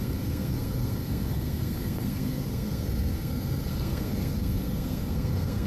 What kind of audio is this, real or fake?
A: fake